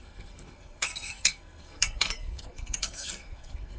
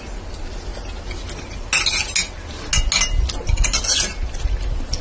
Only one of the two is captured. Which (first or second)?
second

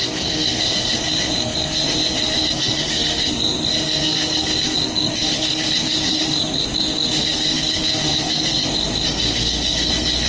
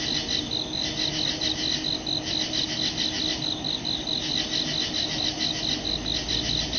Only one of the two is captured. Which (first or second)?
second